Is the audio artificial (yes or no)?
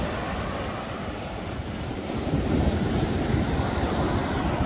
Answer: no